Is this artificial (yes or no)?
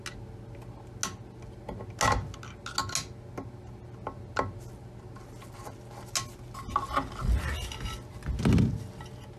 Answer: no